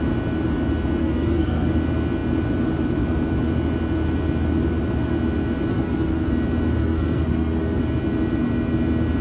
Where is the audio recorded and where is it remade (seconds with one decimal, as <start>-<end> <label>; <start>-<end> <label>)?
0.0-1.0 recorded; 1.0-1.7 remade; 1.7-5.7 recorded; 5.7-6.3 remade; 6.3-6.8 recorded; 6.8-7.8 remade; 7.8-9.2 recorded

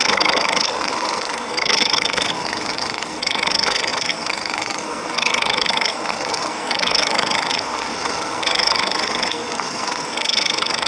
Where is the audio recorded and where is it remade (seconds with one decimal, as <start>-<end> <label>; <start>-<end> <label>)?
0.0-10.9 remade

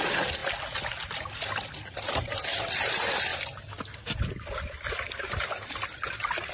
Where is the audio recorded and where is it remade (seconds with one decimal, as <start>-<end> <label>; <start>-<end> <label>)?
0.0-6.5 recorded

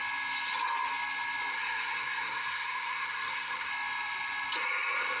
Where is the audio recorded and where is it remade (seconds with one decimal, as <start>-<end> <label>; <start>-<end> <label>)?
0.0-1.5 recorded; 1.5-3.7 remade; 3.7-5.2 recorded

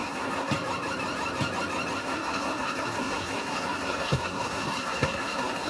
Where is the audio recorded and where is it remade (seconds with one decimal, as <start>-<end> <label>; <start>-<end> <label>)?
0.0-0.5 remade; 0.5-2.0 recorded; 2.0-5.7 remade

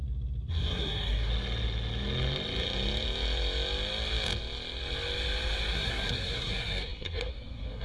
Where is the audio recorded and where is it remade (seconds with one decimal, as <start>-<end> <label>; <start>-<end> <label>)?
0.0-0.5 recorded; 0.5-1.3 remade; 1.3-5.7 recorded; 5.7-7.8 remade

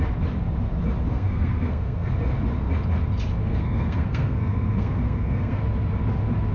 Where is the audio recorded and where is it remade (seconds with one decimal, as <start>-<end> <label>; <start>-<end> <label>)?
0.0-1.1 recorded; 1.1-2.1 remade; 2.1-3.4 recorded; 3.4-5.6 remade; 5.6-6.5 recorded

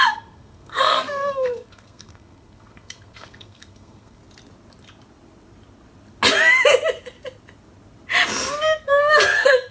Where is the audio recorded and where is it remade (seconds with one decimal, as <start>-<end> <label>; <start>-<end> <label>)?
0.0-4.2 remade; 4.2-8.5 recorded; 8.5-9.7 remade